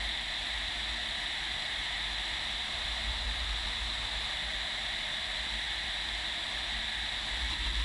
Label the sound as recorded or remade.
recorded